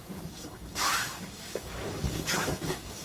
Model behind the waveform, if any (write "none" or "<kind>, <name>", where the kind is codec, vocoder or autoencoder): codec, DAC